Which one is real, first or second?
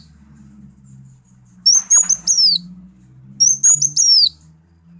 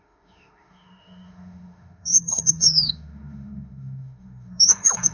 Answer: first